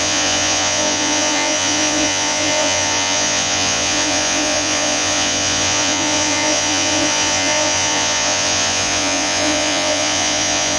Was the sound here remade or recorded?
remade